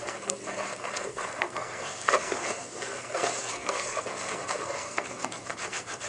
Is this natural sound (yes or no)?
no